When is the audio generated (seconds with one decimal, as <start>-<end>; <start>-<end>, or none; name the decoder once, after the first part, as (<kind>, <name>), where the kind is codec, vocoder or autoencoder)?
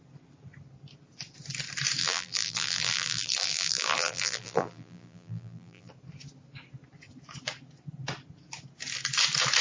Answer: 2.0-5.9 (vocoder, BigVGAN v2)